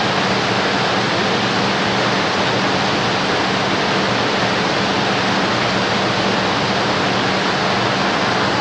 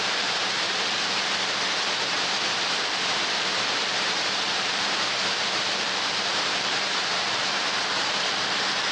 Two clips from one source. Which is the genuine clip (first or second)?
first